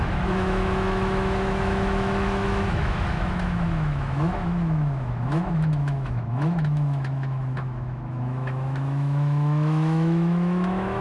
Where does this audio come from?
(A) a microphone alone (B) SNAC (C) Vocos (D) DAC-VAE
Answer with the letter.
D